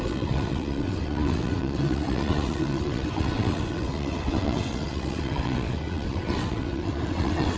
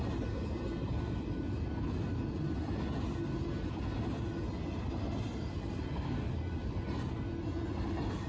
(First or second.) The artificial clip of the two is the first